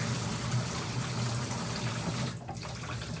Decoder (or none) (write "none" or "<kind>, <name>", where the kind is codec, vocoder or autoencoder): none